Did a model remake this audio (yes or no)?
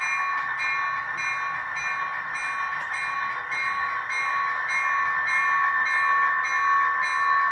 no